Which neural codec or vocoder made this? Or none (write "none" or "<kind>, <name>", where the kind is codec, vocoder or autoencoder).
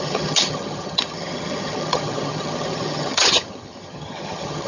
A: vocoder, HiFi-GAN